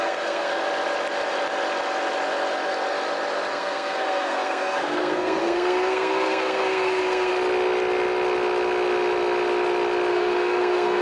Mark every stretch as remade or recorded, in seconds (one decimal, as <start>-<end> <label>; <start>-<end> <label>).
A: 0.0-0.5 remade; 0.5-3.5 recorded; 3.5-7.3 remade; 7.3-10.1 recorded; 10.1-11.0 remade

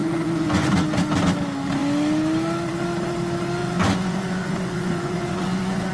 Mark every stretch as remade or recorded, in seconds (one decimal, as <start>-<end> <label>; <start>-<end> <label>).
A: 0.0-0.7 remade; 0.7-3.6 recorded; 3.6-5.9 remade

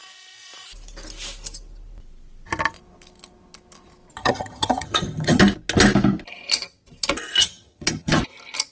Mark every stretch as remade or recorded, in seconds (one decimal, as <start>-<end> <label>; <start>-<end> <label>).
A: 0.0-4.2 recorded; 4.2-5.4 remade; 5.4-7.4 recorded; 7.4-8.2 remade; 8.2-8.7 recorded

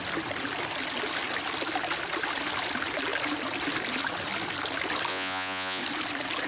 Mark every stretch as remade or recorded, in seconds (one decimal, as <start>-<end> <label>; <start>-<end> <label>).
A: 0.0-5.1 recorded; 5.1-5.8 remade; 5.8-6.5 recorded